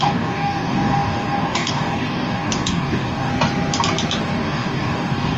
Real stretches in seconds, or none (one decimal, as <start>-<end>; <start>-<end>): 3.3-4.2